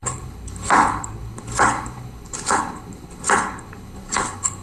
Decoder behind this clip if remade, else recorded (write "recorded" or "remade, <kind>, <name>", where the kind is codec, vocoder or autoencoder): remade, codec, HILCodec